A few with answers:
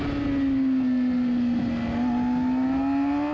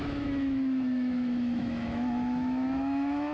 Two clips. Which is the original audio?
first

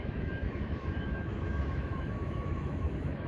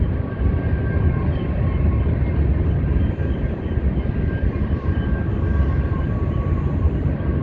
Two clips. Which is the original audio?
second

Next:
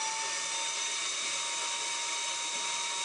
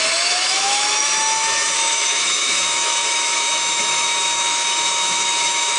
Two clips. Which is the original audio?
first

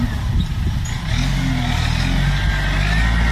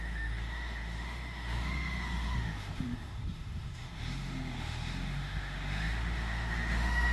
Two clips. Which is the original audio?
first